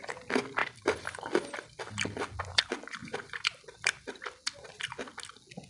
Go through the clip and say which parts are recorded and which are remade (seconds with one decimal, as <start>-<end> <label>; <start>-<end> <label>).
0.0-0.6 recorded; 0.6-2.6 remade; 2.6-3.0 recorded; 3.0-4.7 remade; 4.7-5.7 recorded